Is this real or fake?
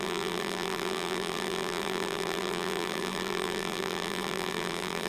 fake